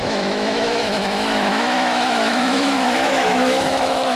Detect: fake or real fake